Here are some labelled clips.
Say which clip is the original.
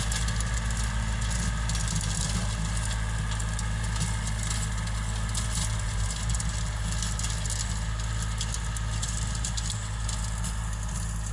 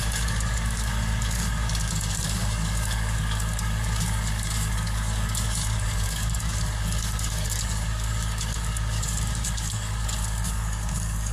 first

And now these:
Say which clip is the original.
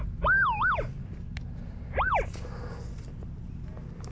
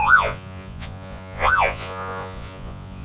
first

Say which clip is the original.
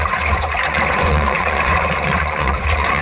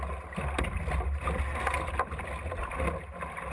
second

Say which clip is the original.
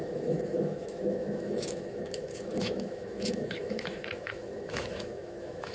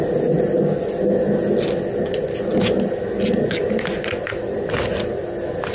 second